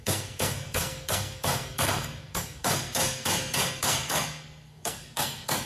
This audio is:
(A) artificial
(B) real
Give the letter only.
A